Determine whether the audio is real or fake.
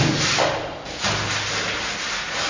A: real